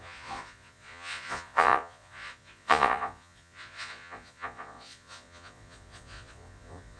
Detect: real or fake fake